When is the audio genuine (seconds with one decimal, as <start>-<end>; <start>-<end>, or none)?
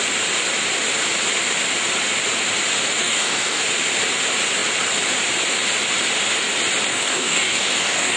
0.0-3.0; 3.6-6.9